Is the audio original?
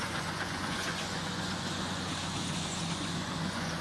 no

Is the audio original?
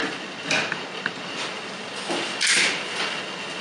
yes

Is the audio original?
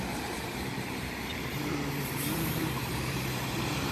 no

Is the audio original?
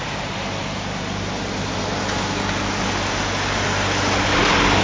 yes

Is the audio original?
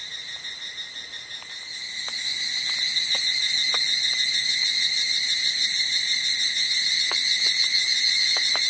yes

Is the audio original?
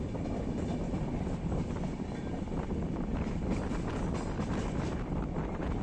no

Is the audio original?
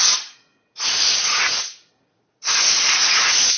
no